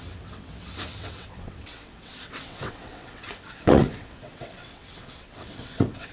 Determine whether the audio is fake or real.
fake